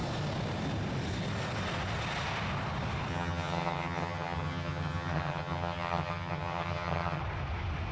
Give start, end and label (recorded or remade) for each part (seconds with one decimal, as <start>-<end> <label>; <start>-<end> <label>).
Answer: 0.0-3.1 recorded; 3.1-7.2 remade; 7.2-7.9 recorded